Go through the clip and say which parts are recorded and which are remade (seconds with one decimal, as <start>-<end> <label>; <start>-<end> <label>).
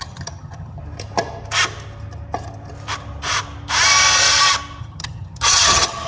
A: 0.0-0.8 remade; 0.8-4.8 recorded; 4.8-6.1 remade